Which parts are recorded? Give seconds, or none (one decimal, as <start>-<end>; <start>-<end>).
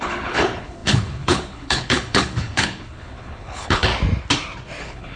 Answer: 3.9-4.8